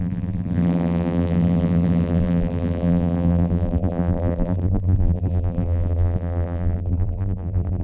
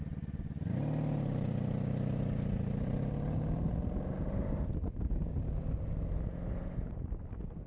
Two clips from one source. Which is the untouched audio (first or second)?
second